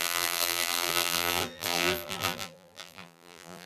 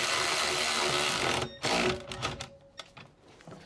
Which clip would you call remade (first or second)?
first